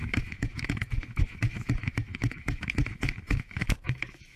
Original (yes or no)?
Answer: no